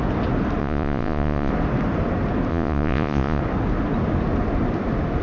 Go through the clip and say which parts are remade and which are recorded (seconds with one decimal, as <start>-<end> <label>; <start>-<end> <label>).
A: 0.0-0.6 recorded; 0.6-1.5 remade; 1.5-2.5 recorded; 2.5-3.4 remade; 3.4-5.2 recorded